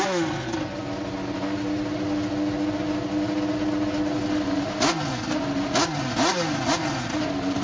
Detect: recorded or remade recorded